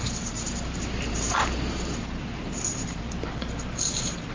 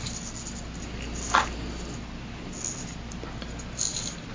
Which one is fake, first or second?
first